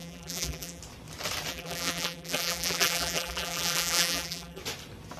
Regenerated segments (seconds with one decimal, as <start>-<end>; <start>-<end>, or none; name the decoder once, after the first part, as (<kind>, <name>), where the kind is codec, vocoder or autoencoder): 0.0-0.8 (vocoder, BigVGAN v2); 1.5-4.6